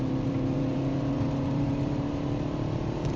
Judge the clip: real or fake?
fake